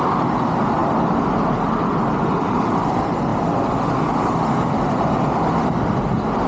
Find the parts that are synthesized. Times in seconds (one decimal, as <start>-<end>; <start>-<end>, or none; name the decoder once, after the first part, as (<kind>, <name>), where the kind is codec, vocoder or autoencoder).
none

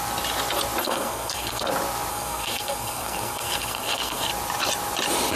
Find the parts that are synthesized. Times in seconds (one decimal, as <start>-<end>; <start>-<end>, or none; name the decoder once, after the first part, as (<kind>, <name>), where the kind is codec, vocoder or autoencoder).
0.8-1.7 (codec, SNAC); 2.1-4.3

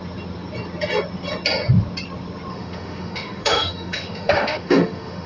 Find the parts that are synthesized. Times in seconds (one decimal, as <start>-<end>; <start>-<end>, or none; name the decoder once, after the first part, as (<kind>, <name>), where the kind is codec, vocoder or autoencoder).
2.5-5.3 (autoencoder, DAC-VAE)

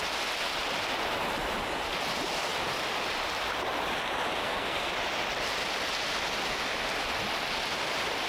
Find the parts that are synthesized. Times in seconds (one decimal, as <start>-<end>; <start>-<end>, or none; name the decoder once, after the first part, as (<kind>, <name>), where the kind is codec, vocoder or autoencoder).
4.4-4.9 (codec, SNAC)

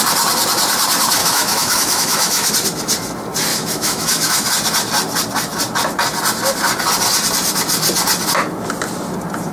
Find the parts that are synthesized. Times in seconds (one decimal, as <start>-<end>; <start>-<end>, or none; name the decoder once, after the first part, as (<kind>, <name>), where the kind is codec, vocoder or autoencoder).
1.2-2.5 (autoencoder, DAC-VAE); 3.5-4.5

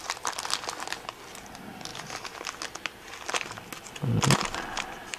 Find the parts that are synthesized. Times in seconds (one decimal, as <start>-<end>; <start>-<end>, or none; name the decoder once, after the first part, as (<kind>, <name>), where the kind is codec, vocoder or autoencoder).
none